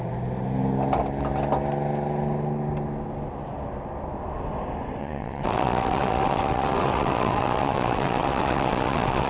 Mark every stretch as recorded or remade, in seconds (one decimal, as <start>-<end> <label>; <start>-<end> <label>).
0.0-5.0 recorded; 5.0-9.3 remade